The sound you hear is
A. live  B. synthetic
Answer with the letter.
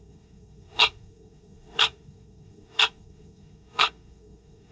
B